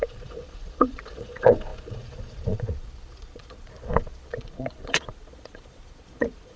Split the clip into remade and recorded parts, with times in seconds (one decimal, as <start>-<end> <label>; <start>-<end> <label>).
0.0-6.6 remade